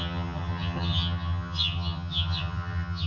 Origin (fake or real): fake